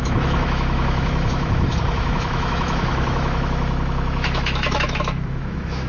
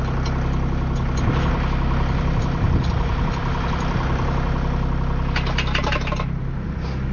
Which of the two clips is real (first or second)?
second